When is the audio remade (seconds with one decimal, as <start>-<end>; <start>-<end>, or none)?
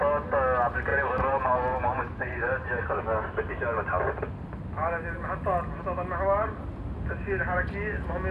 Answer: 0.9-3.0